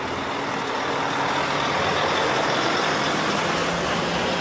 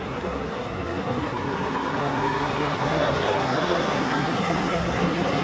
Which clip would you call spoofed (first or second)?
second